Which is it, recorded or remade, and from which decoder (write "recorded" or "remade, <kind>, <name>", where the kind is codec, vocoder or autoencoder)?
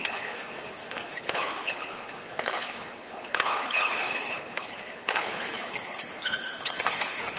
remade, codec, HILCodec